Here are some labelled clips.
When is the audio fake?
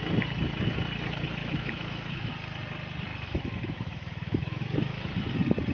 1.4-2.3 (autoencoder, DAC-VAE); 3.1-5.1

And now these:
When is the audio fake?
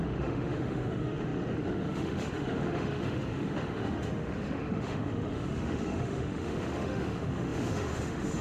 0.0-8.4 (autoencoder, DAC-VAE)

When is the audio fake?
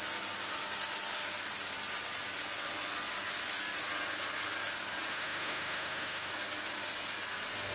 5.1-6.3 (autoencoder, DAC-VAE)